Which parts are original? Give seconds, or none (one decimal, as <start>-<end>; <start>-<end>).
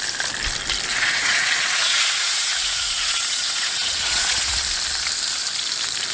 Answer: 0.0-0.9; 4.6-6.1